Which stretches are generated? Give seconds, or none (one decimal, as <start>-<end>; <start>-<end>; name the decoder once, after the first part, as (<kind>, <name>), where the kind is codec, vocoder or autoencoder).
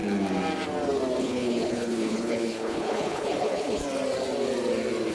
1.2-3.8 (codec, HILCodec)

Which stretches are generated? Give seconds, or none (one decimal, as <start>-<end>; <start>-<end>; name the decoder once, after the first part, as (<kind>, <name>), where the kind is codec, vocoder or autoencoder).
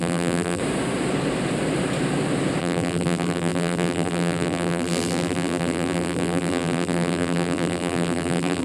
0.0-0.6 (vocoder, BigVGAN v2); 2.6-8.6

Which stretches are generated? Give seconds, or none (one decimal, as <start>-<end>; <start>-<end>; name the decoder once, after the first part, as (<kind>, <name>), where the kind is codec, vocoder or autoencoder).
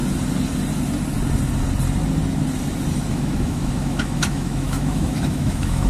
3.1-5.9 (autoencoder, DAC-VAE)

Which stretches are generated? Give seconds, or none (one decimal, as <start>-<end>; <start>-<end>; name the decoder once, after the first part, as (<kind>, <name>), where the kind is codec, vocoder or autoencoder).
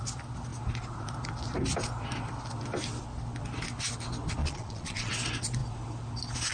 4.4-5.1 (vocoder, Vocos)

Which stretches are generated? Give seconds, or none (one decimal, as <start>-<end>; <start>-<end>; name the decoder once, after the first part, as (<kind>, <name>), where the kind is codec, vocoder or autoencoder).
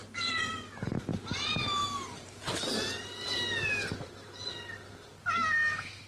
0.0-0.8 (vocoder, BigVGAN v2)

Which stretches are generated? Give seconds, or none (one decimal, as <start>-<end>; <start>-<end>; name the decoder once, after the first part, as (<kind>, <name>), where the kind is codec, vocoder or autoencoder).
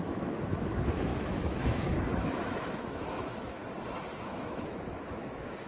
0.0-3.6 (autoencoder, DAC-VAE); 4.2-5.7